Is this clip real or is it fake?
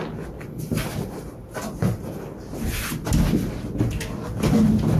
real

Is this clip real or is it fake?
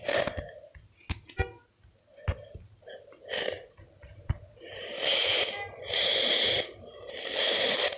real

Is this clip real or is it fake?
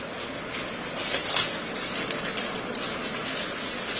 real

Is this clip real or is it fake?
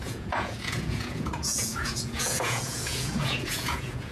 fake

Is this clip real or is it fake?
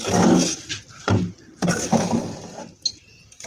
real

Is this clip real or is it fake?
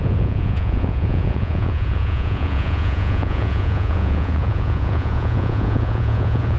fake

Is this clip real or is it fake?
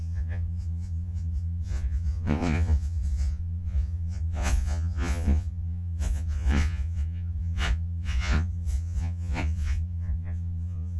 fake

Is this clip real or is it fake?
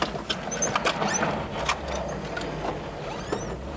real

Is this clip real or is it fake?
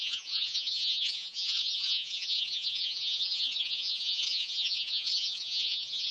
fake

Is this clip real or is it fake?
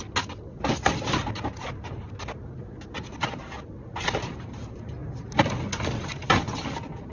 real